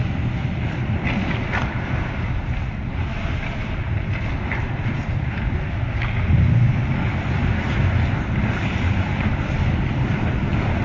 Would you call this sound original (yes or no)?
yes